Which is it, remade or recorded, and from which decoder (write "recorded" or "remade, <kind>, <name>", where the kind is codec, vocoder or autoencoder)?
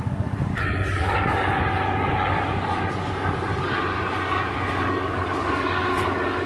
remade, codec, DAC